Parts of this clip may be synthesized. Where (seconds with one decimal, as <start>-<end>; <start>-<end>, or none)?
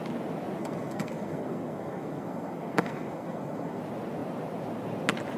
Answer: 0.6-3.8